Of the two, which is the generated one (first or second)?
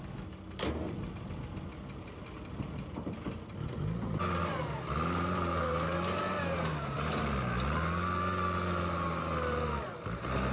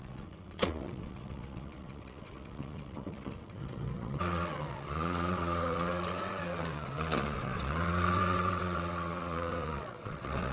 second